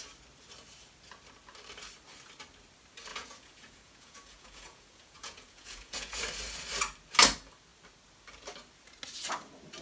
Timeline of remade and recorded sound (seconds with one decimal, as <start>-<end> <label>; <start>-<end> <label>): 0.0-3.1 recorded; 3.1-6.2 remade; 6.2-9.8 recorded